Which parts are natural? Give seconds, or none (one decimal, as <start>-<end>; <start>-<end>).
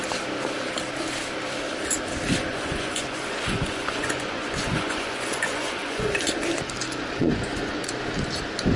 0.0-2.5; 6.1-7.2; 7.9-8.8